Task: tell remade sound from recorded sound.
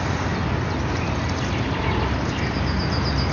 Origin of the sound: recorded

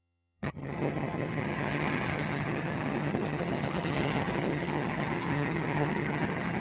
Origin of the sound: remade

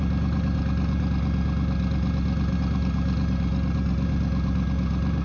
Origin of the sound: recorded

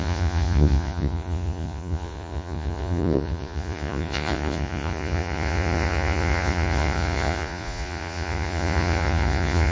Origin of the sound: remade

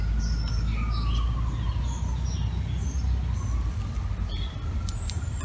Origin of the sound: recorded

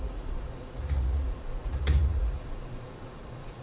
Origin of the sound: remade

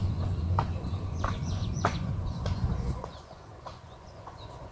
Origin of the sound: remade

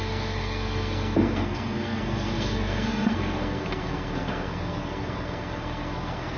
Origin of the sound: remade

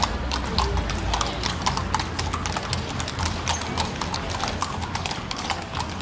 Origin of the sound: recorded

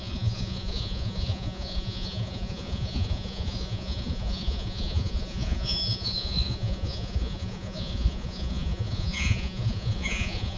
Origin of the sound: remade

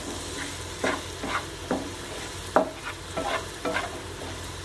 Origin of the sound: recorded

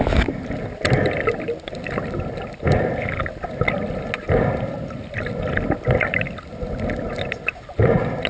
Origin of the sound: recorded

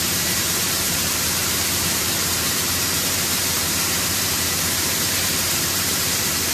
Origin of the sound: remade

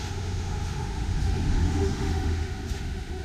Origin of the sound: remade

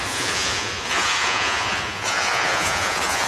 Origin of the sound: remade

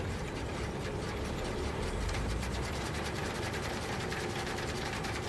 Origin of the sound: remade